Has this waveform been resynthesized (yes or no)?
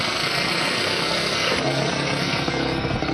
yes